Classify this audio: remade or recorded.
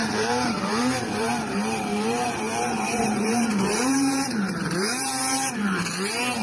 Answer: remade